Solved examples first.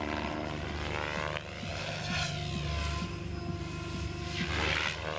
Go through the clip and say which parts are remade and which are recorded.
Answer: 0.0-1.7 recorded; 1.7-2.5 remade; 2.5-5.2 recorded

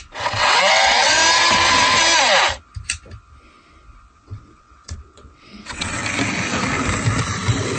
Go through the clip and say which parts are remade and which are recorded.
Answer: 0.0-1.2 remade; 1.2-4.1 recorded; 4.1-6.0 remade; 6.0-7.8 recorded

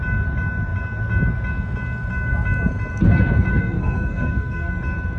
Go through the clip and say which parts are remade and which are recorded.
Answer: 0.0-3.5 recorded; 3.5-4.7 remade; 4.7-5.2 recorded

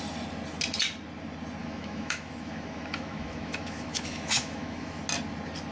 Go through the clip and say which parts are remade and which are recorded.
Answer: 0.0-1.6 recorded; 1.6-5.0 remade; 5.0-5.7 recorded

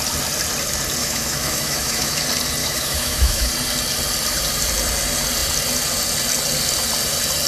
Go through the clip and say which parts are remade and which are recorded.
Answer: 0.0-1.0 recorded; 1.0-2.2 remade; 2.2-2.6 recorded; 2.6-3.5 remade; 3.5-7.5 recorded